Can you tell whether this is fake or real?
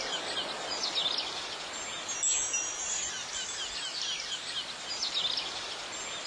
real